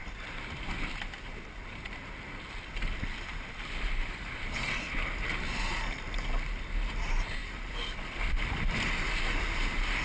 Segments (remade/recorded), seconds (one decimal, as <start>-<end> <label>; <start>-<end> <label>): 0.0-10.0 recorded